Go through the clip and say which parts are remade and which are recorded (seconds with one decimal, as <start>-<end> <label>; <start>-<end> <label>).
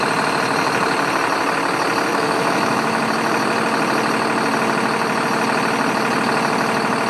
0.0-2.1 recorded; 2.1-3.0 remade; 3.0-7.1 recorded